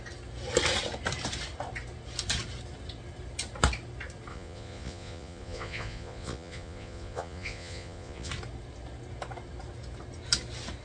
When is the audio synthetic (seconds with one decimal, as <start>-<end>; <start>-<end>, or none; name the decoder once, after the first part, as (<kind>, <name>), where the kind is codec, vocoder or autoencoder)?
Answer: 4.3-8.3 (vocoder, Vocos)